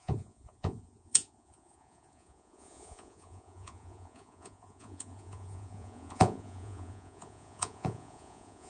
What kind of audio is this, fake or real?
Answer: fake